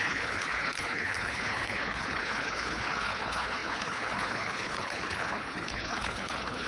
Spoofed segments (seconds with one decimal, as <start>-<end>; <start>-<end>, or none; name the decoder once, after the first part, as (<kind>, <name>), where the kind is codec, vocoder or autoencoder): 0.0-6.7 (codec, HILCodec)

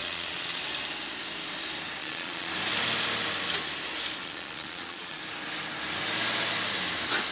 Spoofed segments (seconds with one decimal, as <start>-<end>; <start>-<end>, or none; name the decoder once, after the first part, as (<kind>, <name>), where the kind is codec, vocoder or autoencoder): 0.0-0.6 (vocoder, Vocos); 2.0-2.5; 4.2-5.2